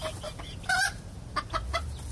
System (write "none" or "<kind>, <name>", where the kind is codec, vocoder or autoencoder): none